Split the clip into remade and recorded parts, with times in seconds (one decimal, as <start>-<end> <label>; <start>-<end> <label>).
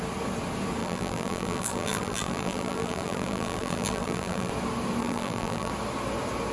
0.0-0.8 recorded; 0.8-4.5 remade; 4.5-5.0 recorded; 5.0-5.7 remade; 5.7-6.5 recorded